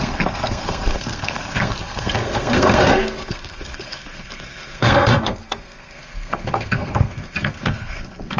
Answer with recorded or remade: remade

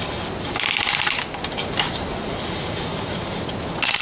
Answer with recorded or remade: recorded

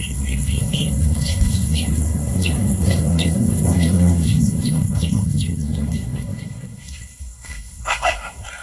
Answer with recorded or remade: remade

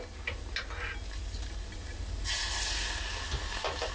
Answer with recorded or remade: recorded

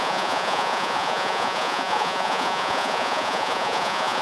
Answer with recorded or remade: remade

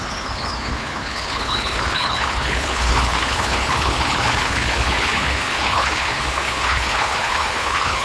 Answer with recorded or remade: remade